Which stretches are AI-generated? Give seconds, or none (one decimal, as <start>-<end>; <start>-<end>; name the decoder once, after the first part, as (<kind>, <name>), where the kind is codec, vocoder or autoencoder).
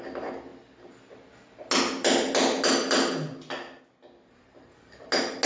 none